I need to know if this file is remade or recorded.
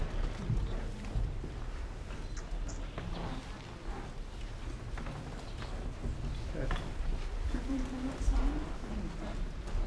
recorded